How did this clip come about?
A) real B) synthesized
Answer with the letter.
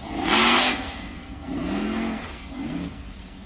B